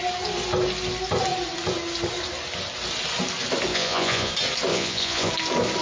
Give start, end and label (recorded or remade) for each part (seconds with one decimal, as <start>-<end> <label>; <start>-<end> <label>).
0.0-3.7 recorded; 3.7-4.3 remade; 4.3-4.7 recorded; 4.7-5.3 remade; 5.3-5.8 recorded